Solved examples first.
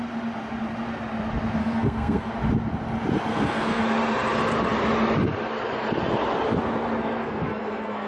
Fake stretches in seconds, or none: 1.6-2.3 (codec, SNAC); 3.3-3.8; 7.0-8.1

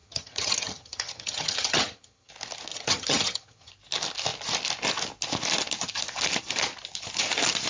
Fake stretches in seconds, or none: 0.0-2.3 (vocoder, HiFi-GAN); 2.7-3.7

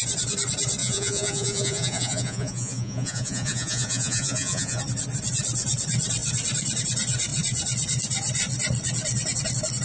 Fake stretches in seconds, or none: 0.8-4.8 (vocoder, Vocos)

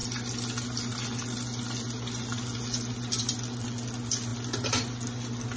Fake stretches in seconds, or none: none

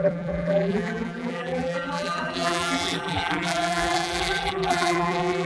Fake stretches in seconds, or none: 0.0-5.5 (vocoder, BigVGAN v2)

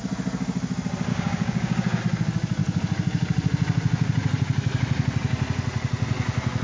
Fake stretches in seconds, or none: 1.1-2.0 (codec, DAC)

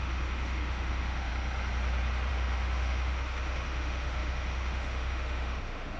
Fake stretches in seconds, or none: 0.0-1.3 (autoencoder, DAC-VAE); 2.3-6.0

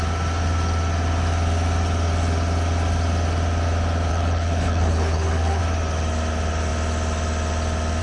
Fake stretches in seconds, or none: 4.1-5.6 (codec, HILCodec)